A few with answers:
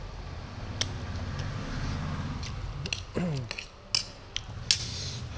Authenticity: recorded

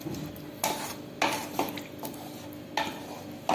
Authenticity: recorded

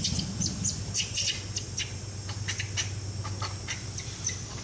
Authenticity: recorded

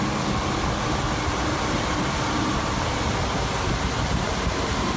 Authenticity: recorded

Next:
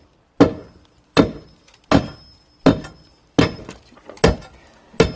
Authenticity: recorded